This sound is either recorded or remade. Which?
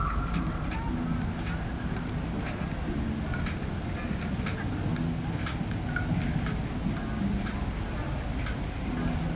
recorded